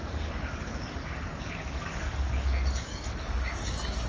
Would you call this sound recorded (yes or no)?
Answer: no